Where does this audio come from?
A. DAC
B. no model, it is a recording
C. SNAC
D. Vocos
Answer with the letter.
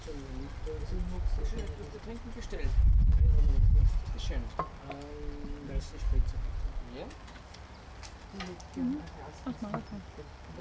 B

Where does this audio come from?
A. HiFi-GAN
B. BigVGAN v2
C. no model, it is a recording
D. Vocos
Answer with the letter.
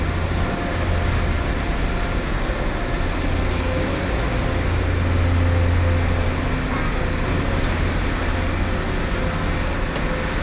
C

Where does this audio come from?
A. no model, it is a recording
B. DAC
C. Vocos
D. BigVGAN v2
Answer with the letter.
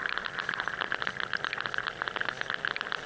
A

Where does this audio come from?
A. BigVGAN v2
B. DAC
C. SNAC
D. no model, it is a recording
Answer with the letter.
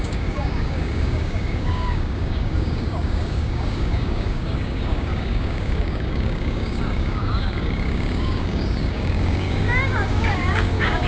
B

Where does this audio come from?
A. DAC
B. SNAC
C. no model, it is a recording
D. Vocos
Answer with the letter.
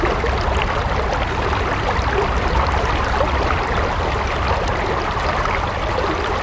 C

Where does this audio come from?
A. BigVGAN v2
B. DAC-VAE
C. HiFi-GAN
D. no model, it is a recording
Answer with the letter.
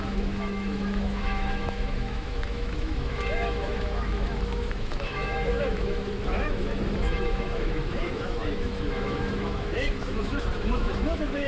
B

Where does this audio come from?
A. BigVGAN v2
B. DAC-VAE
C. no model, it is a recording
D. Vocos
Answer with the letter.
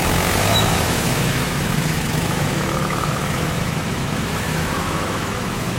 B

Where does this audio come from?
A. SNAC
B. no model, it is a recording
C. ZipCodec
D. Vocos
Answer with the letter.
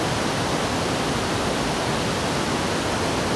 B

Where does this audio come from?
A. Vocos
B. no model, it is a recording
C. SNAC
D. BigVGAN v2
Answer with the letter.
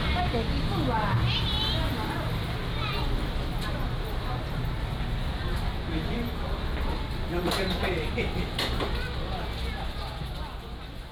B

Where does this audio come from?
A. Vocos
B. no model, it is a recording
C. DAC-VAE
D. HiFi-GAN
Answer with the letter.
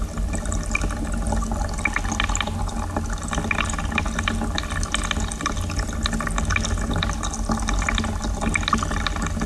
B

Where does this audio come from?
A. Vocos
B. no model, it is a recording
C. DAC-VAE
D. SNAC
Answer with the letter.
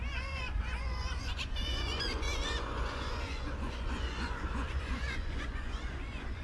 A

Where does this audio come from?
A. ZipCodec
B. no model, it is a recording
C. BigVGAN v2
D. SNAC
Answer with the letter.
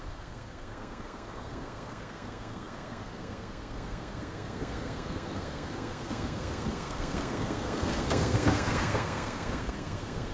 D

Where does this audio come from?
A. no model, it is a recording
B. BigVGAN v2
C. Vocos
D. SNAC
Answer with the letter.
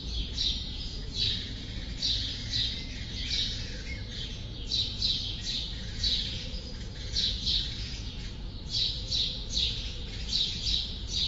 C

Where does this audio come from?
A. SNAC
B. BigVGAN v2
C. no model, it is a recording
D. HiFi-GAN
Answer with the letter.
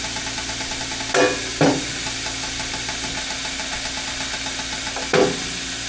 C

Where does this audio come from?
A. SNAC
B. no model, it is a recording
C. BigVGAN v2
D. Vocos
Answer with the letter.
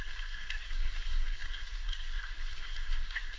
A